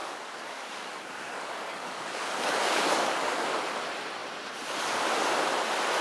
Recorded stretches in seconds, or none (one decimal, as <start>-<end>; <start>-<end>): 3.6-6.0